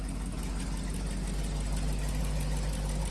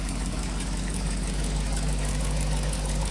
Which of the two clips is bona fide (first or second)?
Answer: first